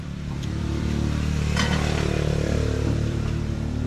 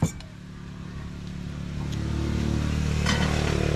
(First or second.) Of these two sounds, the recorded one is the second